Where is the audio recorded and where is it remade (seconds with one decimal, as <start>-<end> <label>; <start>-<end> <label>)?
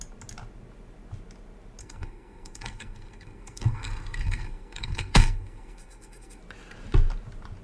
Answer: 0.0-1.8 recorded; 1.8-6.4 remade; 6.4-7.6 recorded